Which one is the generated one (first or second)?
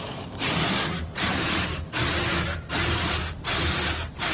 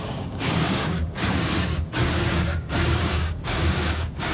second